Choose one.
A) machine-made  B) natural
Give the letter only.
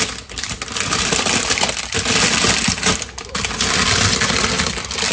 B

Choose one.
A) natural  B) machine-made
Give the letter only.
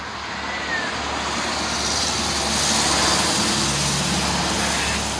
A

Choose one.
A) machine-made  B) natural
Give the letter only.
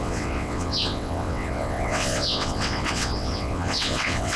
A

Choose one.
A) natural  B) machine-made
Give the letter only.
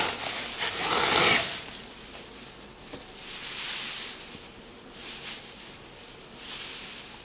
A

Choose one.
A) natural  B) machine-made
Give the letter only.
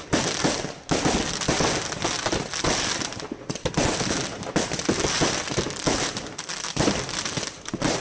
A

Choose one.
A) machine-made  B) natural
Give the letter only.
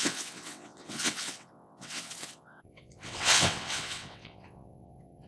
A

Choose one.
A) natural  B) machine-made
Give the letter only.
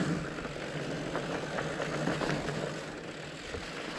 A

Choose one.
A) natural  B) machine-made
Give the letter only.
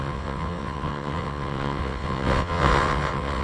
B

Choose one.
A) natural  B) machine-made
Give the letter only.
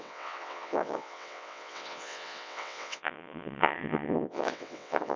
B